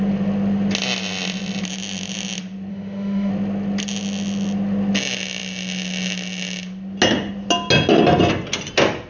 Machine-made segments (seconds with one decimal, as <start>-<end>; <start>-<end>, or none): 2.7-3.3